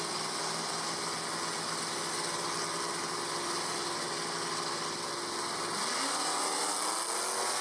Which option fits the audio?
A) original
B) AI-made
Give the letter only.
A